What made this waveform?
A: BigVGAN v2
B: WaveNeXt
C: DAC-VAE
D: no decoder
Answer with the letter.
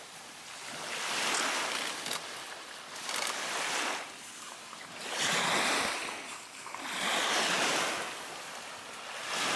D